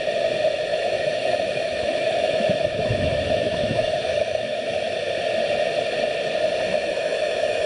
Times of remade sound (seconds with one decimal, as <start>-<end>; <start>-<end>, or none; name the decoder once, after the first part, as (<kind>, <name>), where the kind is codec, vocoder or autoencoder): 0.7-5.1 (autoencoder, DAC-VAE); 6.7-7.7